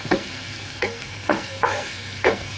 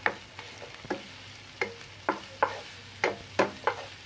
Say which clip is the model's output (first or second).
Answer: first